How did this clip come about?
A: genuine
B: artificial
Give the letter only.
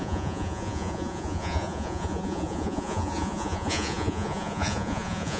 B